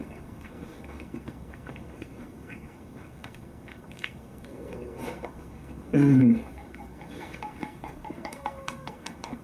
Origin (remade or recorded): remade